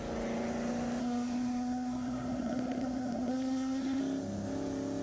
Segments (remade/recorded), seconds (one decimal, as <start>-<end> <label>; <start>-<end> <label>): 0.0-1.0 recorded; 1.0-4.0 remade; 4.0-5.0 recorded